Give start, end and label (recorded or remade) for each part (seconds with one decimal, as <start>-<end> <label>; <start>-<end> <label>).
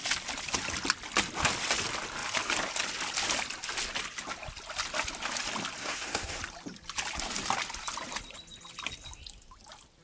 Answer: 0.0-5.8 recorded; 5.8-6.4 remade; 6.4-10.0 recorded